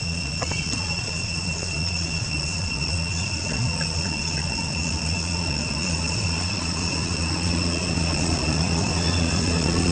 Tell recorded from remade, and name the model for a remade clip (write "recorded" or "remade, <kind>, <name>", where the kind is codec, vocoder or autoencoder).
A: remade, vocoder, Vocos